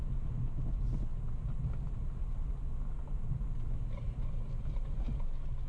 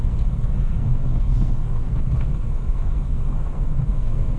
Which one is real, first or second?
first